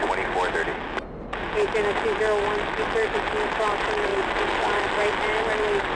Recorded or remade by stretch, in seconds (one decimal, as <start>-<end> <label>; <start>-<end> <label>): 0.0-6.0 recorded